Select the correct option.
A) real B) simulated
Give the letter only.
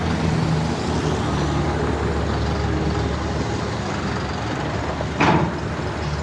A